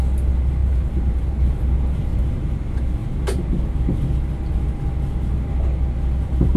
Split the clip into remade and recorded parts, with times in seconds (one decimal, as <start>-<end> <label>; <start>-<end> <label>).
0.0-0.6 recorded; 0.6-1.2 remade; 1.2-2.1 recorded; 2.1-2.6 remade; 2.6-6.6 recorded